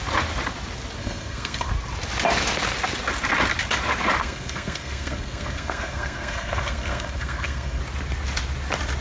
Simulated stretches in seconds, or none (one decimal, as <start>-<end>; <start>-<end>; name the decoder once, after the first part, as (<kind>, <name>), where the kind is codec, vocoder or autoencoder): 1.0-1.7 (codec, SNAC); 4.2-7.8